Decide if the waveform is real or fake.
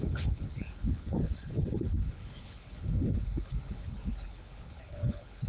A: fake